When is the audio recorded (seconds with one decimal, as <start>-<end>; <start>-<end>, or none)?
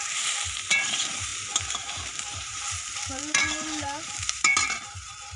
none